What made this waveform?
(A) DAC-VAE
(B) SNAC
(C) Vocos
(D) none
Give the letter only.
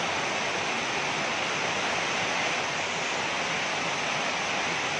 D